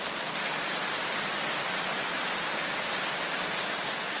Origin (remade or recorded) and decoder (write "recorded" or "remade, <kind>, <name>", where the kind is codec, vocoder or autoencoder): recorded